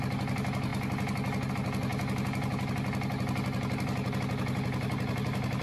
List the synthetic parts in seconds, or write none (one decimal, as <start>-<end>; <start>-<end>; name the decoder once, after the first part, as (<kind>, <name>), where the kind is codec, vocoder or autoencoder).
none